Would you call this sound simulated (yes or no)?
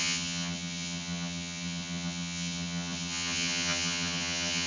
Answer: yes